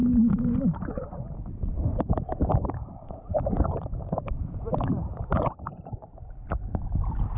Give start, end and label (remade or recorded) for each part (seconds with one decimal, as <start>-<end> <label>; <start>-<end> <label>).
0.0-7.4 remade